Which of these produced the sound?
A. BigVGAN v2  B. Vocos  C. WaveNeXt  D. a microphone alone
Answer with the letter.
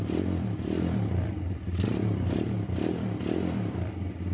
D